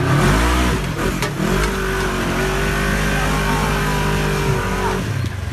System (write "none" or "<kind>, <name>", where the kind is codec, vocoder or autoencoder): none